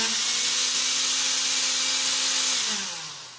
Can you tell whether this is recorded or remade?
recorded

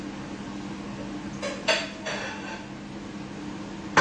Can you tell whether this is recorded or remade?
recorded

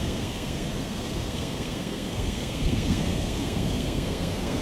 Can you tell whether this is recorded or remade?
remade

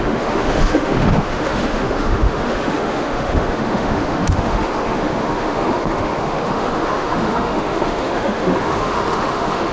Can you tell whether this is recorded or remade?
remade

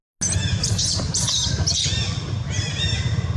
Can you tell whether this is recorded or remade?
recorded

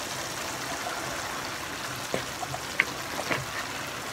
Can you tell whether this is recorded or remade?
recorded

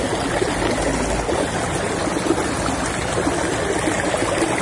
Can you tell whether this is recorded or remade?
recorded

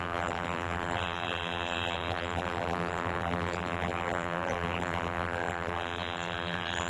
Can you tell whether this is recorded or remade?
remade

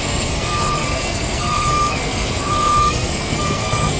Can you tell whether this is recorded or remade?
remade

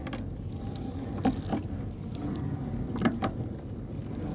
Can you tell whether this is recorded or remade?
remade